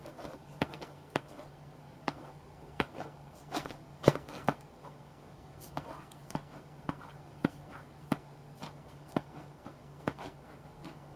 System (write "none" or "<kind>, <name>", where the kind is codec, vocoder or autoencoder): codec, SNAC